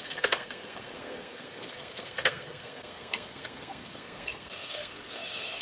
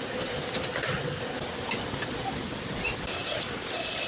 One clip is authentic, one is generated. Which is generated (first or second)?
first